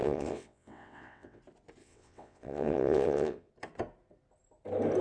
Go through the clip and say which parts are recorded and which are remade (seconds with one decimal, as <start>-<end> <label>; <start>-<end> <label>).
0.0-1.4 remade; 1.4-1.8 recorded; 1.8-3.5 remade; 3.5-5.0 recorded